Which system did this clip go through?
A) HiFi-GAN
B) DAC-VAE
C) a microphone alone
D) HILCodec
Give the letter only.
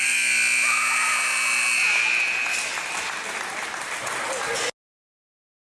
C